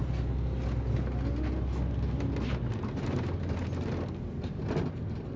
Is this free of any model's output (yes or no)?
yes